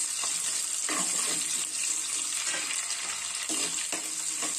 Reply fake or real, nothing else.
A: real